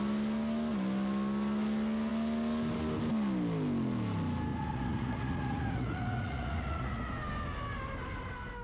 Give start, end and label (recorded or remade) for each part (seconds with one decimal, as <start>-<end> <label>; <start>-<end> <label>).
0.0-4.5 recorded; 4.5-7.1 remade; 7.1-8.6 recorded